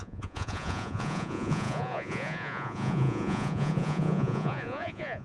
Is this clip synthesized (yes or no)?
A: yes